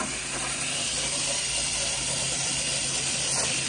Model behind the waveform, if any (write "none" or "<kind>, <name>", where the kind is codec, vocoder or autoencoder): none